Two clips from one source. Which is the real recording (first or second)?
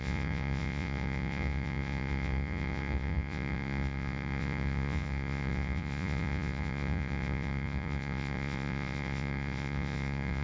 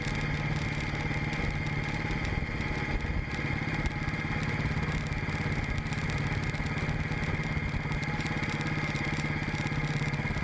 second